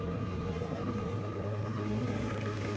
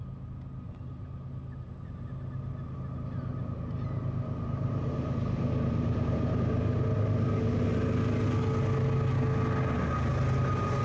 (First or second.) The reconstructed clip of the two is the first